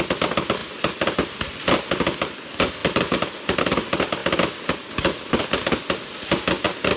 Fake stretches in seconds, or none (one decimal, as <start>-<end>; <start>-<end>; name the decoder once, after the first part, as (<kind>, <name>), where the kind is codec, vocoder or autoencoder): 2.8-3.6 (vocoder, BigVGAN v2)